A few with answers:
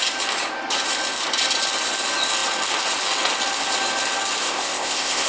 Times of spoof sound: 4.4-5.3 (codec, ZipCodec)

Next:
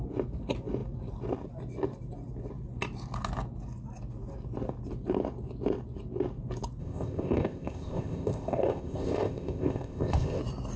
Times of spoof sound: 6.8-10.4 (codec, ZipCodec)

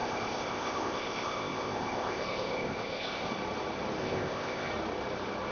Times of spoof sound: 0.0-3.3 (codec, ZipCodec); 4.0-4.7

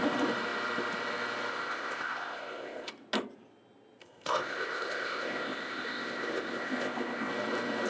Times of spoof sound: 1.5-2.9 (codec, ZipCodec); 4.0-7.3